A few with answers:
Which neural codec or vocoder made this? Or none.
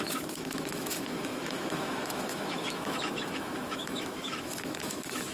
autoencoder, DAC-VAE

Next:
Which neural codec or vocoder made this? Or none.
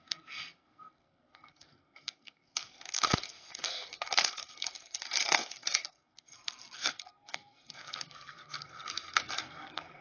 codec, SNAC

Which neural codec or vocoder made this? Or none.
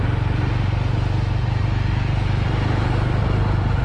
none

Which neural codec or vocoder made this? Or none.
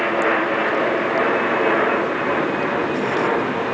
none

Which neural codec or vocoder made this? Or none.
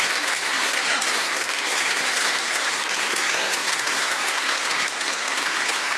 codec, SNAC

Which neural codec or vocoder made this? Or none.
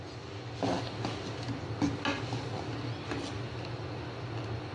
none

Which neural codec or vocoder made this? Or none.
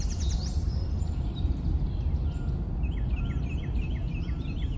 none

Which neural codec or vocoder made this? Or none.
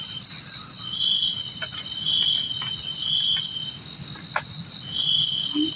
none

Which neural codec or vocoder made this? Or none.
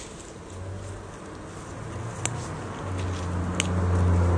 none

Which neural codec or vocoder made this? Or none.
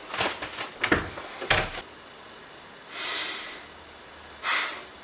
none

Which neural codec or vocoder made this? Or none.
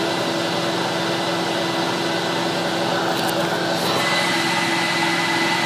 none